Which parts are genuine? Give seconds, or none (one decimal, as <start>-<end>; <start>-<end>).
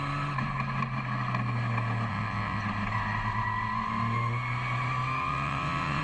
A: 0.0-2.1; 2.6-5.2